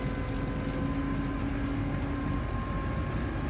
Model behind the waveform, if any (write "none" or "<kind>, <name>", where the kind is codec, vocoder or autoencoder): none